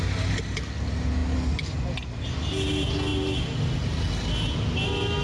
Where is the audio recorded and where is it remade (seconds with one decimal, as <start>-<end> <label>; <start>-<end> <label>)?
0.0-5.2 recorded